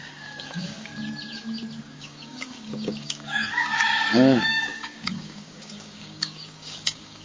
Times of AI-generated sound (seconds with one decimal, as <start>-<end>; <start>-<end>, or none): 0.0-0.9; 1.8-7.2